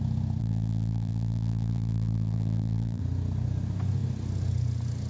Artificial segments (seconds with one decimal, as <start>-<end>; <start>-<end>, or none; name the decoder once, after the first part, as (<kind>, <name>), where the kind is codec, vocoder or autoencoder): 0.4-3.0 (vocoder, BigVGAN v2)